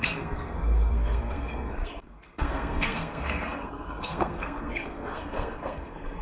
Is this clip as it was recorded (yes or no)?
no